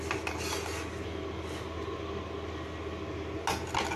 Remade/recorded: recorded